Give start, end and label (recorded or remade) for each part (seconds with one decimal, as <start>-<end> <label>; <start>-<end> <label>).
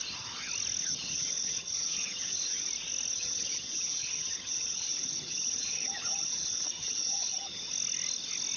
0.0-0.8 recorded; 0.8-2.7 remade; 2.7-3.1 recorded; 3.1-7.6 remade; 7.6-8.6 recorded